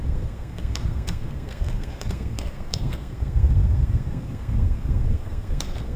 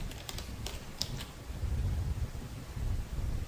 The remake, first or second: first